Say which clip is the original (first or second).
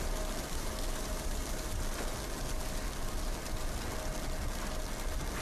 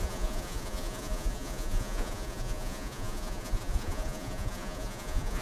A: first